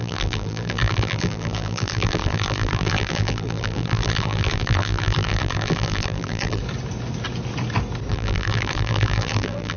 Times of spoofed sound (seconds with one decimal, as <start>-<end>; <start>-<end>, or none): 0.0-6.6; 8.1-9.8